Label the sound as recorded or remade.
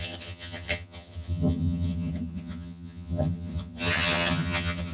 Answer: remade